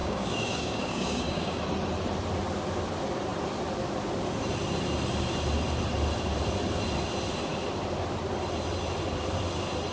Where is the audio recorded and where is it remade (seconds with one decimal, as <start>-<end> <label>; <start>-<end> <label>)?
0.0-1.6 remade; 1.6-9.9 recorded